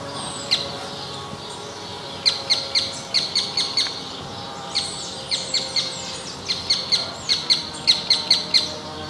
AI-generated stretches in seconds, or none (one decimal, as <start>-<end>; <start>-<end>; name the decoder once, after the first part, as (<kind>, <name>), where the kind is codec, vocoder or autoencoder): none